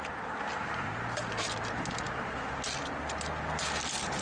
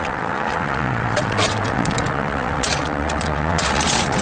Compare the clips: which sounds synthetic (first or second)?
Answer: second